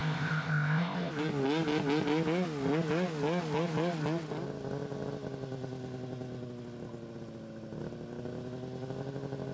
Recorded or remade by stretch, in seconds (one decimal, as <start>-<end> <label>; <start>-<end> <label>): 0.0-1.1 remade; 1.1-9.5 recorded